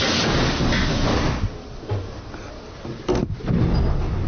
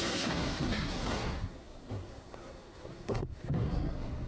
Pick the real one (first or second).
first